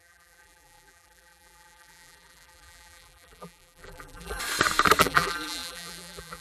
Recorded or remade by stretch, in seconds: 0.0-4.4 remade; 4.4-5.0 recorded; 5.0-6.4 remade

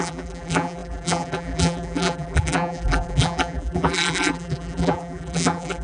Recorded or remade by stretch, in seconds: 0.0-5.8 remade

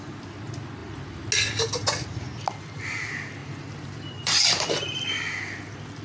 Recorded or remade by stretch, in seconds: 0.0-3.4 recorded; 3.4-4.7 remade; 4.7-6.0 recorded

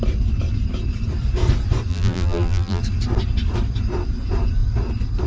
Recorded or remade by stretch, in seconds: 0.0-1.9 recorded; 1.9-2.8 remade; 2.8-5.3 recorded